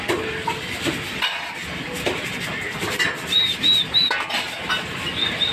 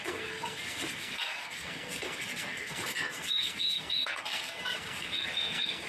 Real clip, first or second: first